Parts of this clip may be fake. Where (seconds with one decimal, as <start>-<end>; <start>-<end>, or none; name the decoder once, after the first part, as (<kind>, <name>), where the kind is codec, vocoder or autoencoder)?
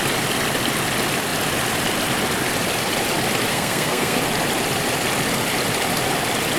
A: 3.5-4.2 (codec, SNAC)